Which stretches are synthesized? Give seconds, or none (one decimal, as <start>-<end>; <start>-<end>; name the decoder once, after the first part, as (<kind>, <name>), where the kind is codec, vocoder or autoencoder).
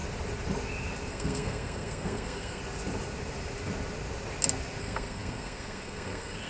1.1-2.6 (codec, SNAC); 4.8-6.5